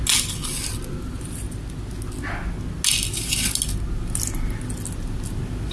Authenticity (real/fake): real